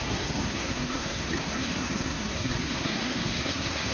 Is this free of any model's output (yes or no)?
no